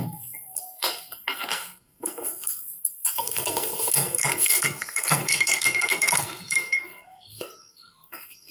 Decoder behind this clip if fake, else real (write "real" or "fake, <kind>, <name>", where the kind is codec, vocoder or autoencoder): fake, codec, SNAC